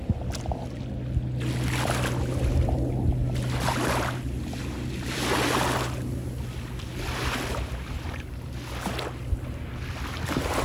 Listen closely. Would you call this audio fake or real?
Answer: real